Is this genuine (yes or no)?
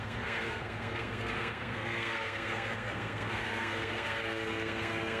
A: no